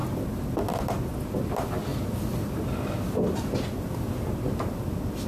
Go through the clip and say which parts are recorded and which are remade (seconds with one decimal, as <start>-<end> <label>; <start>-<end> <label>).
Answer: 0.0-5.3 recorded